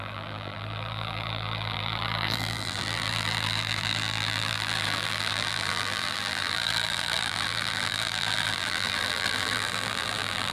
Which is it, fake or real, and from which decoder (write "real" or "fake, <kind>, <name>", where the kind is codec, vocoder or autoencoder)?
fake, vocoder, BigVGAN v2